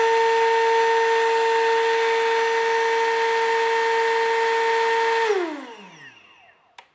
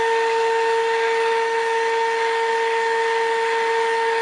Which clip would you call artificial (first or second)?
second